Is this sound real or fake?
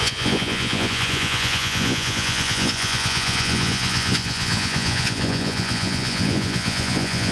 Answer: fake